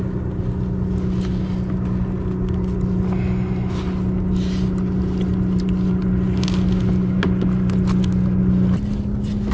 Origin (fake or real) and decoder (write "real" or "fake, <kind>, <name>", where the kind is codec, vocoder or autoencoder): real